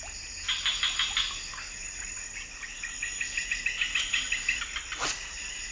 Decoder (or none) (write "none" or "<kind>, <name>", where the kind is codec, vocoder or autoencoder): none